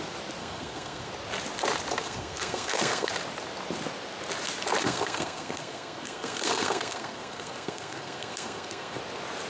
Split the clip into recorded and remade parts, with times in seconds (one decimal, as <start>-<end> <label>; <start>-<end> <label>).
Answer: 0.0-0.4 recorded; 0.4-1.1 remade; 1.1-2.0 recorded; 2.0-3.1 remade; 3.1-4.8 recorded; 4.8-9.0 remade; 9.0-9.5 recorded